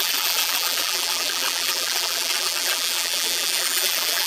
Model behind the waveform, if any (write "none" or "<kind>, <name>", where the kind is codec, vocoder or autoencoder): vocoder, BigVGAN v2